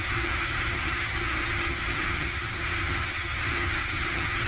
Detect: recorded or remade remade